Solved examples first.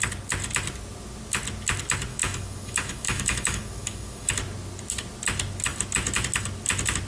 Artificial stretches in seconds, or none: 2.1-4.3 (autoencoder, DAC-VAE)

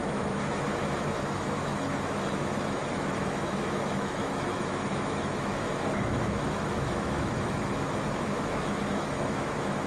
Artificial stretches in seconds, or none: 0.0-9.9 (autoencoder, DAC-VAE)

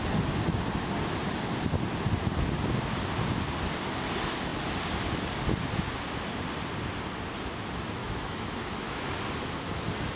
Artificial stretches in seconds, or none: 8.0-9.1 (autoencoder, DAC-VAE)

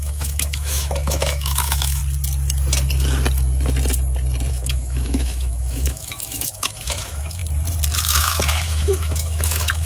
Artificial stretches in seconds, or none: 0.0-2.0 (autoencoder, DAC-VAE); 4.5-7.4; 8.0-9.9

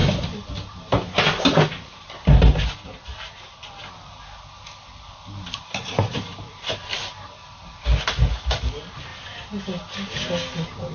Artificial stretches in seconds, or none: none

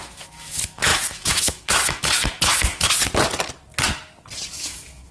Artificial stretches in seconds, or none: 0.0-2.7 (autoencoder, DAC-VAE); 4.6-5.1

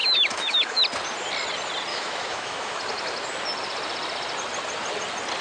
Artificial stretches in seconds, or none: 0.0-0.8 (autoencoder, DAC-VAE); 1.9-2.8